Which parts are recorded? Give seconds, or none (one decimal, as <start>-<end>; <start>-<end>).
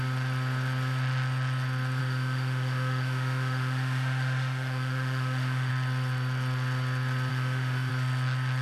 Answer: 0.0-2.0; 5.7-7.3; 7.9-8.6